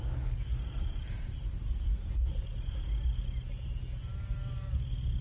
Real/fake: real